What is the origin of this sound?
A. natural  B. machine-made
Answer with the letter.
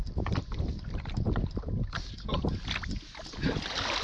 A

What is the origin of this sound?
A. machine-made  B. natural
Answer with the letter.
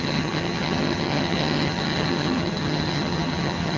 A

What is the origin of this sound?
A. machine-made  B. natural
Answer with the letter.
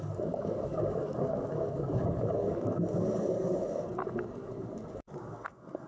A